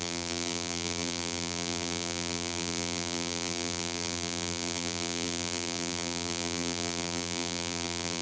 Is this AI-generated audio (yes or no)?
yes